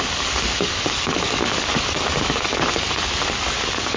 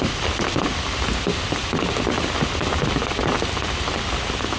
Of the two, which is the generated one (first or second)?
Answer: first